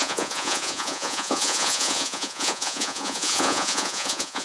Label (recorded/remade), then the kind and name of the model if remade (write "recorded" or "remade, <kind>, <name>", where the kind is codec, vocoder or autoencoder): remade, vocoder, Vocos